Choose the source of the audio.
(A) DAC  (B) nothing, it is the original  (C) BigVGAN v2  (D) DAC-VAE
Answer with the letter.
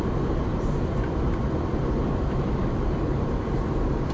C